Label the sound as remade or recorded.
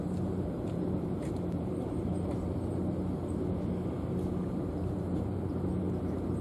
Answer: remade